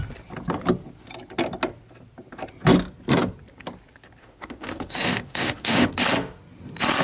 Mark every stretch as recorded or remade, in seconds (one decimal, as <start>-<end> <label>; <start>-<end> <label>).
0.0-4.2 recorded; 4.2-5.9 remade; 5.9-7.0 recorded